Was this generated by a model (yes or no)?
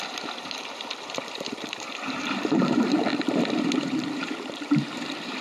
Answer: yes